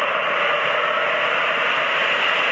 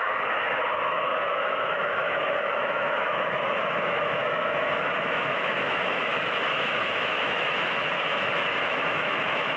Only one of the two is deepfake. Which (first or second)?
second